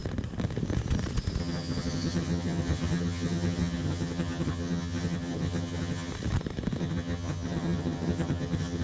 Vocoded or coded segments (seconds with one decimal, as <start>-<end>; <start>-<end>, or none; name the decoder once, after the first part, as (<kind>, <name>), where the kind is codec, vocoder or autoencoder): 1.4-6.1 (vocoder, HiFi-GAN); 6.8-8.8